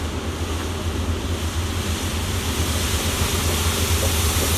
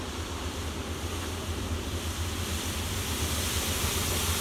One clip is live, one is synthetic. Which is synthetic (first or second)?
second